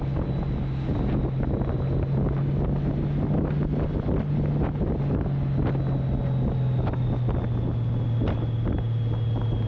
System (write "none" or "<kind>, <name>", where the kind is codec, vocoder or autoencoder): none